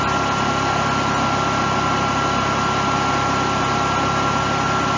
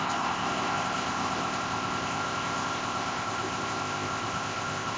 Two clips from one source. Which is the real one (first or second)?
first